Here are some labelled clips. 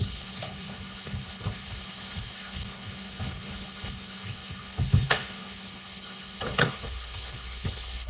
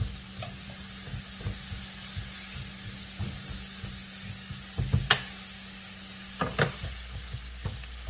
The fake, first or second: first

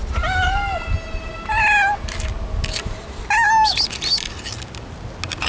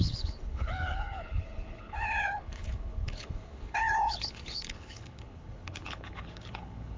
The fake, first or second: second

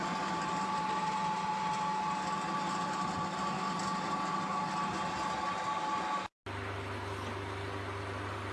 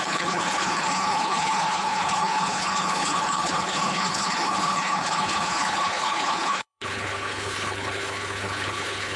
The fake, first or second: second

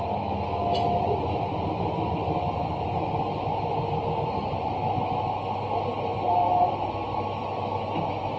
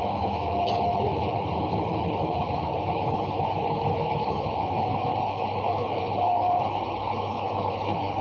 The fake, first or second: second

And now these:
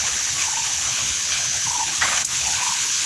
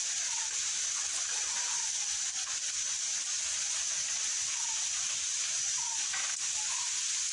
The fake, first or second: first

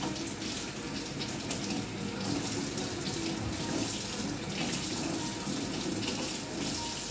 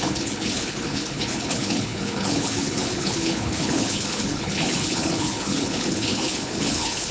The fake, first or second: second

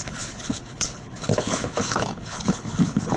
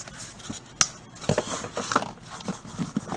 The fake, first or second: first